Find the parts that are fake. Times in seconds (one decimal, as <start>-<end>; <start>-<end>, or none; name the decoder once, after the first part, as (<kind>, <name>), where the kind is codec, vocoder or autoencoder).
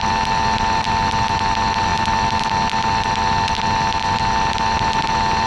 none